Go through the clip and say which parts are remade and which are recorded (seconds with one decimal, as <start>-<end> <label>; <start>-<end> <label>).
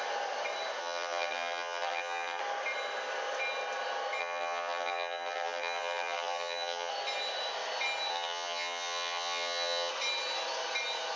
0.0-0.8 recorded; 0.8-2.4 remade; 2.4-4.2 recorded; 4.2-6.9 remade; 6.9-8.1 recorded; 8.1-9.9 remade; 9.9-11.2 recorded